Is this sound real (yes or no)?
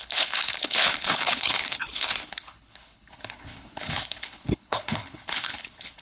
no